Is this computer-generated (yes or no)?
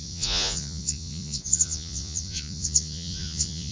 yes